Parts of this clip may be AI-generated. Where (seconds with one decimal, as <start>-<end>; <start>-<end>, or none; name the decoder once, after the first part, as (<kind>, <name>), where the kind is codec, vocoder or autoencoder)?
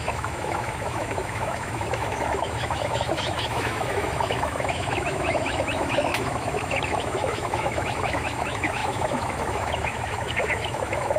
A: 0.0-11.2 (autoencoder, DAC-VAE)